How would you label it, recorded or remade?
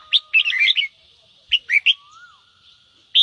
recorded